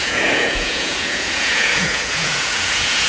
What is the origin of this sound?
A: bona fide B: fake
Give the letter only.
B